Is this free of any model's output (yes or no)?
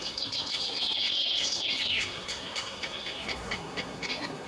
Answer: no